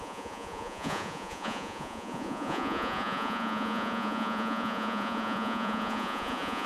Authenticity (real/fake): fake